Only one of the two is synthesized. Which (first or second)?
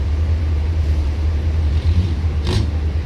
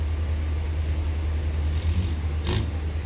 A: first